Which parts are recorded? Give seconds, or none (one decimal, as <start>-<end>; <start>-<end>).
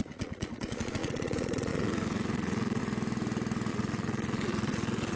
2.8-3.7